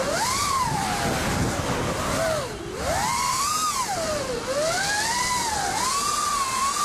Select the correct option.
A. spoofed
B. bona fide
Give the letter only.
B